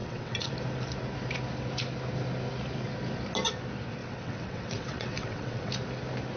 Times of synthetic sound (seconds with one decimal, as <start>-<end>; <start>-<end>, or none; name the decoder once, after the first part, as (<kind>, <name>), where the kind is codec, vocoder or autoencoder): 0.0-0.5 (vocoder, WaveNeXt); 4.0-5.7

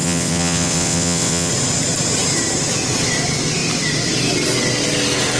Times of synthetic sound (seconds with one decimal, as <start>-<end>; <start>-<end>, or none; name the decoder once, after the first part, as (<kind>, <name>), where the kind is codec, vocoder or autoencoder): 0.0-1.5 (vocoder, WaveNeXt)

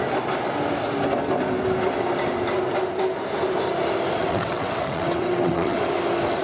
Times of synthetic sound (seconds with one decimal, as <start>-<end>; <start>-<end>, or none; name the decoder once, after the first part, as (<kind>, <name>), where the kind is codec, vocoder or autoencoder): 4.2-5.9 (vocoder, WaveNeXt)

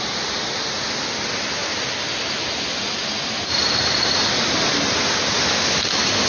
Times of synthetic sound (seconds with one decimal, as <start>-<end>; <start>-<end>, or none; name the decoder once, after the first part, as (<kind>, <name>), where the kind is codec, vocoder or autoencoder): none

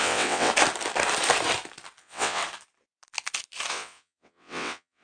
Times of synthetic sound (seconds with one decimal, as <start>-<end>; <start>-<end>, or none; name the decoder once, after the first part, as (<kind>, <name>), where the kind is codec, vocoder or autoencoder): 0.0-0.5 (vocoder, WaveNeXt); 2.0-2.4; 3.7-5.0

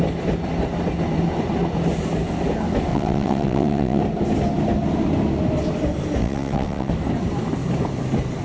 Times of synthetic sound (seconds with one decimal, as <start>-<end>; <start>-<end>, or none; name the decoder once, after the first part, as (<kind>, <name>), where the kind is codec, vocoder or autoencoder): 2.9-4.0 (vocoder, WaveNeXt); 6.2-6.9

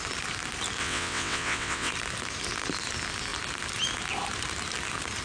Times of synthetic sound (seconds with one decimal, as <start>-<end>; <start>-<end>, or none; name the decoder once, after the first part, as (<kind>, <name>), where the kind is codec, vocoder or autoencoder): 0.8-1.9 (vocoder, WaveNeXt)